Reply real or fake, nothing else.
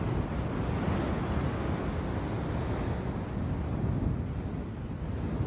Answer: real